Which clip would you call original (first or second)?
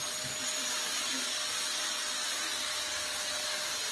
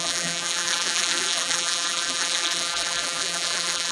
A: first